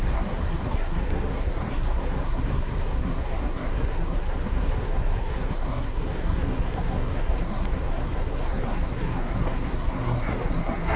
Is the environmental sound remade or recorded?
remade